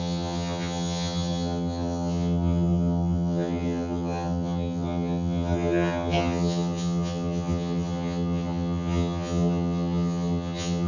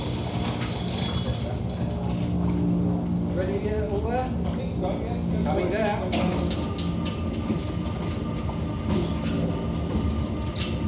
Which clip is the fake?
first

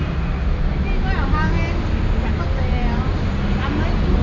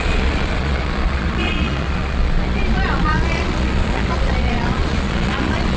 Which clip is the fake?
second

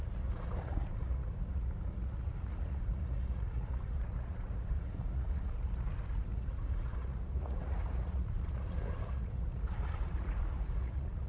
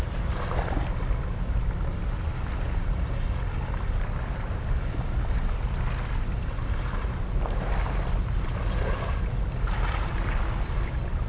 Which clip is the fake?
first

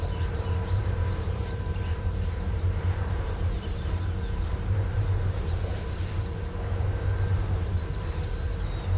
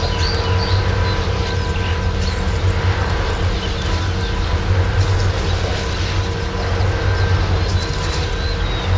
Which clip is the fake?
first